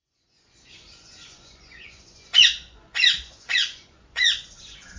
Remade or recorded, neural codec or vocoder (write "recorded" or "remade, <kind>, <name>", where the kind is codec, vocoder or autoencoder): remade, vocoder, Vocos